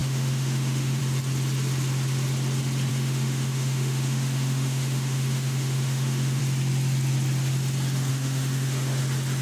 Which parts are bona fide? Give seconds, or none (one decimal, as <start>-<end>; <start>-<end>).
1.0-2.9; 6.4-8.1; 9.0-9.4